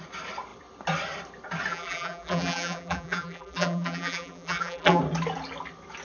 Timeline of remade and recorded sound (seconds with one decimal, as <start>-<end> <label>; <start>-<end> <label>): 0.0-1.7 recorded; 1.7-5.0 remade; 5.0-6.0 recorded